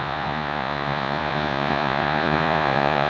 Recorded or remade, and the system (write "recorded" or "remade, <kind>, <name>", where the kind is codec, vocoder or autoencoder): remade, vocoder, Vocos